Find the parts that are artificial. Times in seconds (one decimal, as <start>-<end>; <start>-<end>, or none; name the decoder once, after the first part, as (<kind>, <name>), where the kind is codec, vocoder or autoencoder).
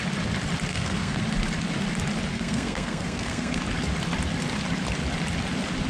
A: 0.7-1.2 (codec, SNAC); 2.3-3.6